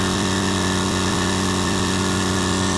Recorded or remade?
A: recorded